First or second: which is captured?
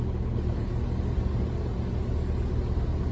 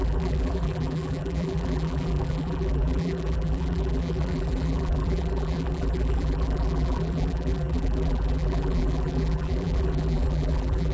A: first